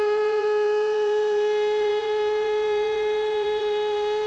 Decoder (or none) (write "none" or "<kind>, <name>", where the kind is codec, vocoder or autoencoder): vocoder, Vocos